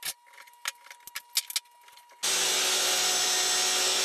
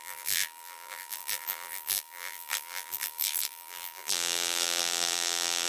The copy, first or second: second